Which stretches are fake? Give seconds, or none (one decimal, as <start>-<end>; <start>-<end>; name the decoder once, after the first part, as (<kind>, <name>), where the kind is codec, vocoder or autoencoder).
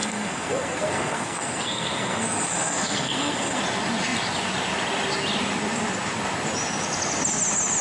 0.0-3.6 (codec, SNAC)